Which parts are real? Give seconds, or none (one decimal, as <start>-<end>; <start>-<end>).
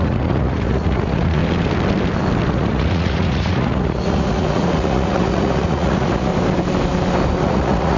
1.4-2.5; 6.3-7.4